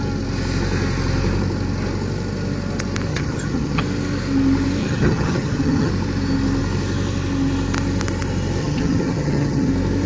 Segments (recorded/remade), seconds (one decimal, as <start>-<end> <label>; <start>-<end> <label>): 0.0-3.1 recorded; 3.1-3.8 remade; 3.8-4.8 recorded; 4.8-5.9 remade; 5.9-8.6 recorded; 8.6-9.7 remade; 9.7-10.1 recorded